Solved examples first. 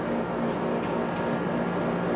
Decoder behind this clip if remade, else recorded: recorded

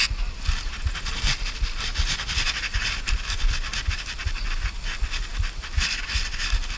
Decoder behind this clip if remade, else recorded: recorded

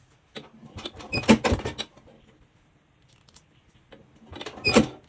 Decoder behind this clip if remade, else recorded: recorded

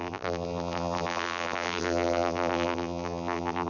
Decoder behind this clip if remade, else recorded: remade, vocoder, BigVGAN v2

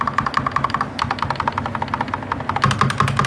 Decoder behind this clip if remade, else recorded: recorded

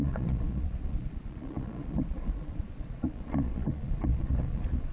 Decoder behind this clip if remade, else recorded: remade, vocoder, Vocos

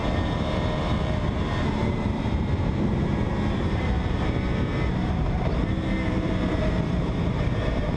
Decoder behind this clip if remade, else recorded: remade, vocoder, BigVGAN v2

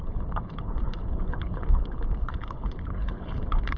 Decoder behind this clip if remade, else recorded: remade, codec, HILCodec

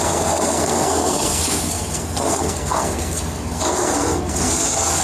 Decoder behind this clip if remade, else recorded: remade, codec, SNAC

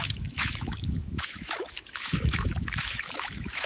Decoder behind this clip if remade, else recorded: remade, autoencoder, DAC-VAE